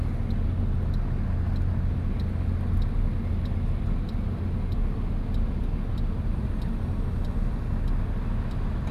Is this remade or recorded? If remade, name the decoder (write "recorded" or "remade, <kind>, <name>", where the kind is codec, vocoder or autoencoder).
recorded